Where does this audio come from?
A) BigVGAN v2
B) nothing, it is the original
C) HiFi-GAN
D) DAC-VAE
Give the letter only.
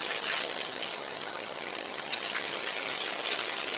C